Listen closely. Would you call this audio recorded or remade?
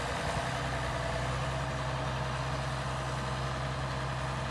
recorded